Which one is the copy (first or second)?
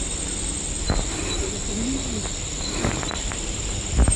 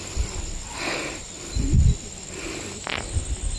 first